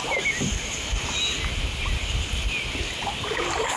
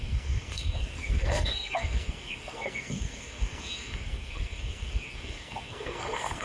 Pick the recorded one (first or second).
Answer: first